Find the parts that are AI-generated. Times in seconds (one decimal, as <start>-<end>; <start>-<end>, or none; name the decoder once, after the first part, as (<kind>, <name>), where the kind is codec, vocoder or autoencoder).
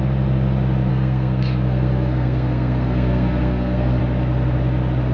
0.9-4.0 (codec, SNAC)